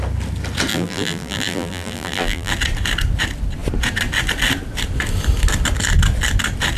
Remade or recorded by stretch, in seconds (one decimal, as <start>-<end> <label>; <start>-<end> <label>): 0.0-0.7 recorded; 0.7-2.5 remade; 2.5-6.8 recorded